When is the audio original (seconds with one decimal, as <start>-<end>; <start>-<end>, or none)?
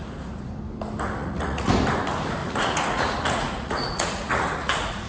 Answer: 0.0-1.2; 1.7-2.4